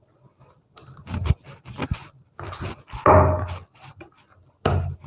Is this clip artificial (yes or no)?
no